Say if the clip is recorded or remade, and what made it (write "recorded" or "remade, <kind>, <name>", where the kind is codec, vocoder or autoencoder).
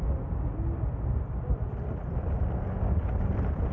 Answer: recorded